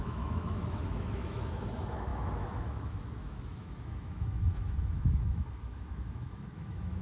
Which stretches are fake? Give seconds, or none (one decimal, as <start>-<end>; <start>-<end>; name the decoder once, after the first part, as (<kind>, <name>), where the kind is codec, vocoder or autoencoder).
0.0-7.0 (autoencoder, DAC-VAE)